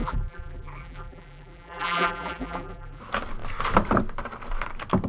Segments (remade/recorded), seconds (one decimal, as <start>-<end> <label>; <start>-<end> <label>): 0.0-3.0 remade; 3.0-5.1 recorded